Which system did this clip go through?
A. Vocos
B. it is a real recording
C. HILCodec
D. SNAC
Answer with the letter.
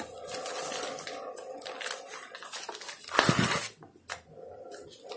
B